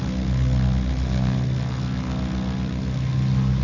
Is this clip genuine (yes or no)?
yes